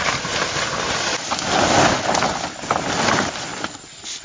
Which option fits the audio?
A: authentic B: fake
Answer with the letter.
A